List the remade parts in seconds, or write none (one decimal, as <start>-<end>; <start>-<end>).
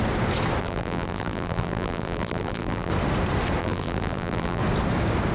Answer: 0.6-2.9; 3.6-4.6